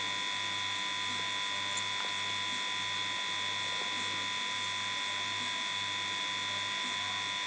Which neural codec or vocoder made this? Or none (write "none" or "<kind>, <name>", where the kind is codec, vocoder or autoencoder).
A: none